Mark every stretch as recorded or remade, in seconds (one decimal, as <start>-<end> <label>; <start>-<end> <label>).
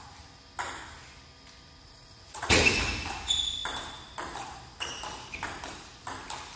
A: 0.0-1.8 recorded; 1.8-2.6 remade; 2.6-6.6 recorded